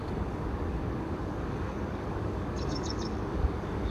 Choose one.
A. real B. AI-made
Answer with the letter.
B